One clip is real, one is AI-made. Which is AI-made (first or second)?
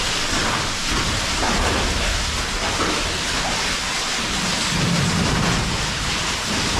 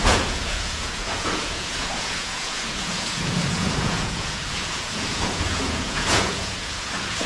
second